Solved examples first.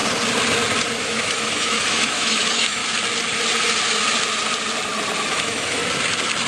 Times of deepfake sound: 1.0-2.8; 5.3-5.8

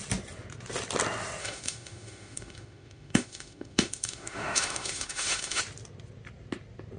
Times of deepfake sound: 1.4-5.6

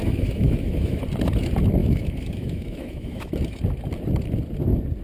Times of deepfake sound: 0.0-1.0; 1.8-3.3

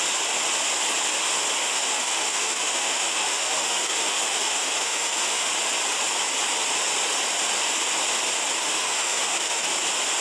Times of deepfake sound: 1.6-5.5; 8.6-9.7

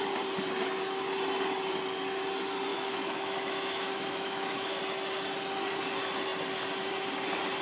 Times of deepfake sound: 2.7-4.8

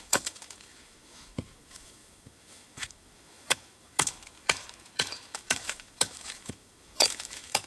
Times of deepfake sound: 0.0-7.7

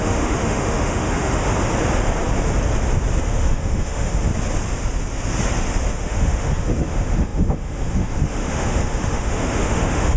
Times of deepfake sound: 0.0-1.4; 3.2-4.3; 5.9-10.2

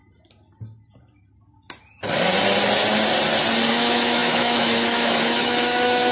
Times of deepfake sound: 3.7-6.1